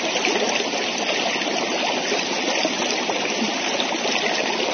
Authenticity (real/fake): real